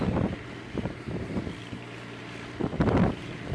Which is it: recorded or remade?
remade